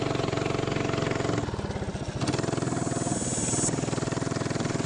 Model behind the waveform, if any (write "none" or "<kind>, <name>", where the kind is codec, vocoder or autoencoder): none